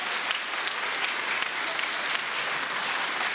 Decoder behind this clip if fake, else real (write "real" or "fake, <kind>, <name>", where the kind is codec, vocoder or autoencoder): real